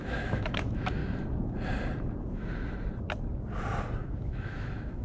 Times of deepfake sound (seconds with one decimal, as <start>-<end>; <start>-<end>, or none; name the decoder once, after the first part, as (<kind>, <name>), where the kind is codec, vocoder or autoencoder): 0.0-1.0 (autoencoder, DAC-VAE); 4.0-5.0

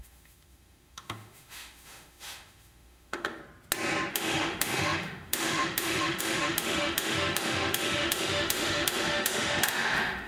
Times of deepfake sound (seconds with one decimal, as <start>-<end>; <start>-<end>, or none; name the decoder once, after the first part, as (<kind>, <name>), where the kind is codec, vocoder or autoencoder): 0.0-3.4 (autoencoder, DAC-VAE); 4.1-10.3

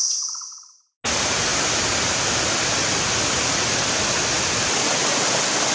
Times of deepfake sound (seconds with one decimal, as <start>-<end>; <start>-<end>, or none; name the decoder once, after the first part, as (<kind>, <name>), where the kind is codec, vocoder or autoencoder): none

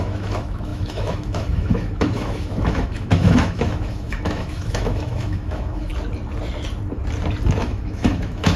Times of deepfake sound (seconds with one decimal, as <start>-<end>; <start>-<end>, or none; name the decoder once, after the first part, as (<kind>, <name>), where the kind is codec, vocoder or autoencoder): 0.0-5.9 (autoencoder, DAC-VAE); 7.6-8.6

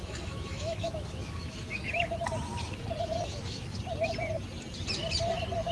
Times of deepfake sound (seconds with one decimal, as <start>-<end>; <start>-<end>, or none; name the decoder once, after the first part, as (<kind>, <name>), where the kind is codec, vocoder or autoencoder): 0.0-2.1 (autoencoder, DAC-VAE); 3.3-3.8

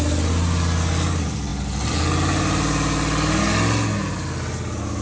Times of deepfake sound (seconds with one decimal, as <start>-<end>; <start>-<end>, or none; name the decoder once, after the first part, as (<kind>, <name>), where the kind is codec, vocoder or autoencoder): none

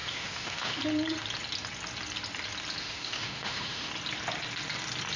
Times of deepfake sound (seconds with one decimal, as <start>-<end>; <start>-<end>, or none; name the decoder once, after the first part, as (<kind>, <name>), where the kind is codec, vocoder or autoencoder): 0.0-0.8 (autoencoder, DAC-VAE); 2.8-3.9